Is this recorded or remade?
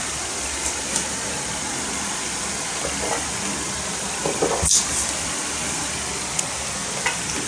recorded